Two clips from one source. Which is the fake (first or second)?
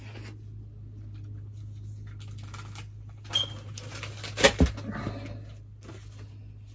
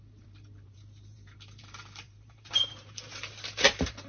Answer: second